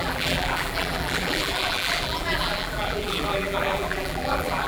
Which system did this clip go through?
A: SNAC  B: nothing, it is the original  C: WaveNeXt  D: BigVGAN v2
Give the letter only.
D